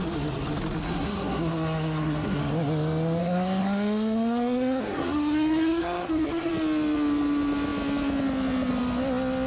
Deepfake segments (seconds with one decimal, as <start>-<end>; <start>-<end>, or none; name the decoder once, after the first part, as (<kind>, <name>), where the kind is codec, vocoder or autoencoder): 0.8-2.4 (codec, SNAC); 3.2-6.5

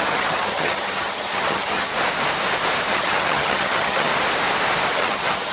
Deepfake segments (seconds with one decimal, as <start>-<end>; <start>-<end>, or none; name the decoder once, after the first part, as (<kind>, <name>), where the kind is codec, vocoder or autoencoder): 0.0-1.9 (vocoder, HiFi-GAN); 2.9-4.1; 4.9-5.5

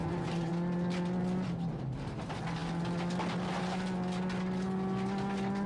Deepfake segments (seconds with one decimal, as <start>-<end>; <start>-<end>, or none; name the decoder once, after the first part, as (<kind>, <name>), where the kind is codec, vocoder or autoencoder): 0.0-0.5 (vocoder, Vocos)

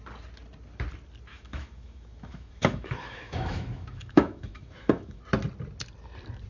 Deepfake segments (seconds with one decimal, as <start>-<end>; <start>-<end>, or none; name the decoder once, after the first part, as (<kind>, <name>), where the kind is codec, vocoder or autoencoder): 1.3-5.2 (autoencoder, DAC-VAE)

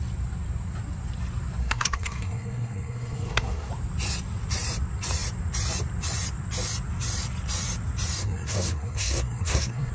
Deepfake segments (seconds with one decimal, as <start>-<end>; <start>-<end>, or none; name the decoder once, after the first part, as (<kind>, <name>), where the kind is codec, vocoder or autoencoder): 1.6-3.7 (codec, SNAC); 8.2-9.9

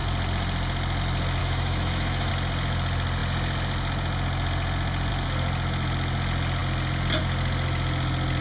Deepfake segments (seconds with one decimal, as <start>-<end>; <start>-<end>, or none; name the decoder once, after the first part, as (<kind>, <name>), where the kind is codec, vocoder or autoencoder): 1.4-2.3 (autoencoder, DAC-VAE)

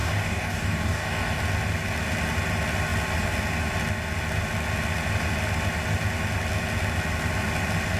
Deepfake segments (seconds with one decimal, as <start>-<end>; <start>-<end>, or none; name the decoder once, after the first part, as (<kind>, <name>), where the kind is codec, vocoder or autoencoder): 0.0-1.4 (codec, DAC)